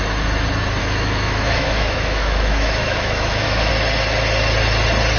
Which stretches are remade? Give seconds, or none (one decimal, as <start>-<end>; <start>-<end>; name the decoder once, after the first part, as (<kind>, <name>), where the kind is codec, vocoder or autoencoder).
0.8-3.7 (autoencoder, DAC-VAE)